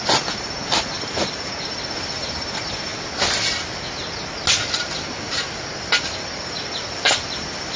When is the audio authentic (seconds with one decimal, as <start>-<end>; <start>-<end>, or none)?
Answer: 0.0-7.8